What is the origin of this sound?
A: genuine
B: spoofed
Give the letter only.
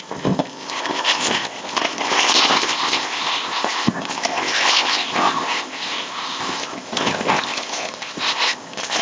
B